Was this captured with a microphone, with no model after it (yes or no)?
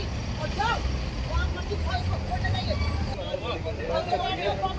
yes